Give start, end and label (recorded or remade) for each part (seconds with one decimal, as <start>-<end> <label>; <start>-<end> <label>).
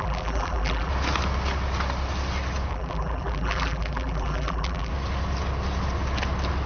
0.0-0.9 remade; 0.9-2.7 recorded; 2.7-4.9 remade; 4.9-6.7 recorded